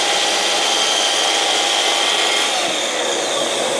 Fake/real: real